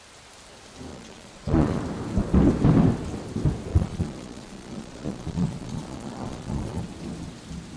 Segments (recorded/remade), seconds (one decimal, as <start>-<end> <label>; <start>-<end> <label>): 0.0-0.9 recorded; 0.9-1.8 remade; 1.8-3.7 recorded; 3.7-6.8 remade; 6.8-7.8 recorded